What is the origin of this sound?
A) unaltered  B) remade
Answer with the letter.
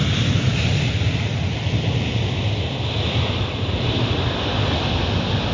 A